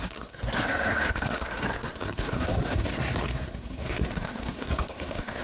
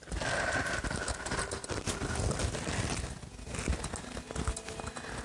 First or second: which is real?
second